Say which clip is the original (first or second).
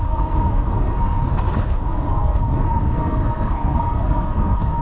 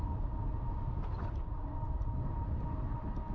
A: second